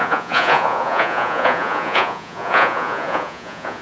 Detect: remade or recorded remade